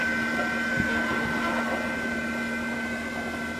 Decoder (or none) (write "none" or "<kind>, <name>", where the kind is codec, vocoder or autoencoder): vocoder, BigVGAN v2